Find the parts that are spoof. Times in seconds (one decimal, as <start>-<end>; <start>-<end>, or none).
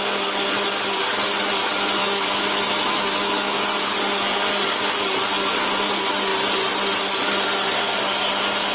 2.0-4.0